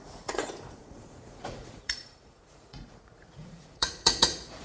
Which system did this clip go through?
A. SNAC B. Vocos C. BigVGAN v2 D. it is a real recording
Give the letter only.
B